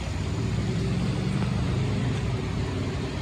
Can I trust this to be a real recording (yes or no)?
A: yes